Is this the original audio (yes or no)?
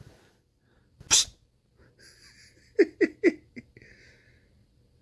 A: yes